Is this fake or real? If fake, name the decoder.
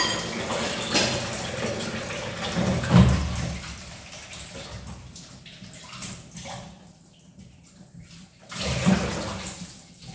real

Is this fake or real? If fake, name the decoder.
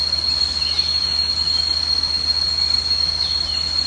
real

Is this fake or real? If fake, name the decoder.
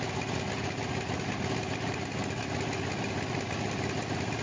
real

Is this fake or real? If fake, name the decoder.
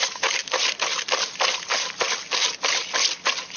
real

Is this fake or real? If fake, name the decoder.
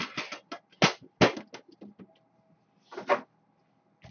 real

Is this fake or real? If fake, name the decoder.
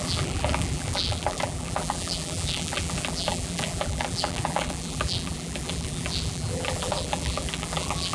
fake, vocoder, BigVGAN v2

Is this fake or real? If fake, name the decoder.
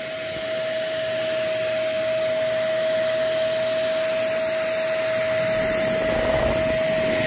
real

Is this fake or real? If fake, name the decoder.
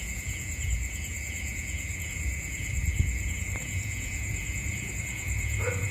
fake, vocoder, Vocos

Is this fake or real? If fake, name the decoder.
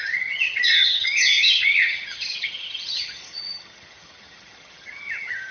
fake, vocoder, HiFi-GAN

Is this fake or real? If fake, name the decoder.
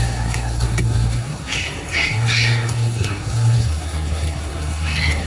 fake, codec, SNAC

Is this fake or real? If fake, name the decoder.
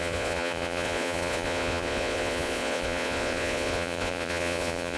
fake, vocoder, Vocos